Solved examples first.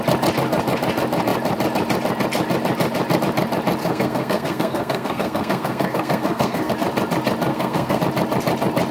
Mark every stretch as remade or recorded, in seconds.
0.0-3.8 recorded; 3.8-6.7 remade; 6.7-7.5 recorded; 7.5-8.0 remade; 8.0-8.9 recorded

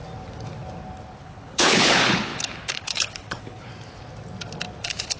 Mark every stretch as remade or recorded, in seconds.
0.0-1.2 recorded; 1.2-3.7 remade; 3.7-4.8 recorded; 4.8-5.2 remade

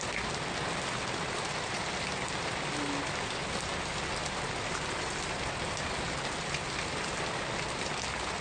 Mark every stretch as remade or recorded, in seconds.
0.0-8.4 recorded

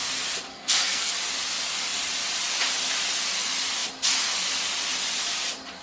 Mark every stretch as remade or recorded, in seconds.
0.0-0.5 recorded; 0.5-1.1 remade; 1.1-5.8 recorded

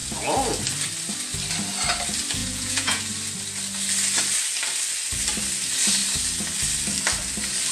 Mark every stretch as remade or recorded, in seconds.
0.0-2.4 recorded; 2.4-3.0 remade; 3.0-7.7 recorded

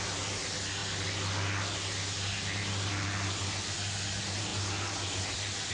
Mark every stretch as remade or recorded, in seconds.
0.0-5.7 recorded